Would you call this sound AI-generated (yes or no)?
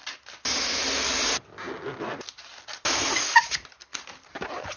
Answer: no